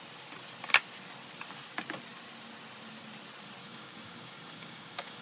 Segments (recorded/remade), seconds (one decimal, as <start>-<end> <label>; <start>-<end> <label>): 0.0-3.6 recorded; 3.6-5.2 remade